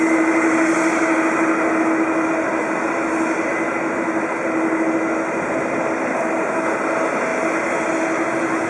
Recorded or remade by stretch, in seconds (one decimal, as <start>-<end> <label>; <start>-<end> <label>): 0.0-8.7 recorded